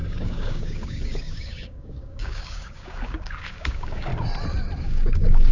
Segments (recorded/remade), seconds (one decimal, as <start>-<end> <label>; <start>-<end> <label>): 0.0-4.1 remade; 4.1-4.8 recorded; 4.8-5.5 remade